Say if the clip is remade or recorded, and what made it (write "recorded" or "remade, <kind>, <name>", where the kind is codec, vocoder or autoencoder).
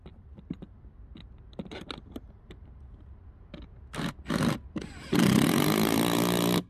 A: recorded